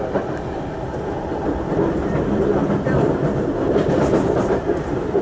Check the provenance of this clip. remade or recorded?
recorded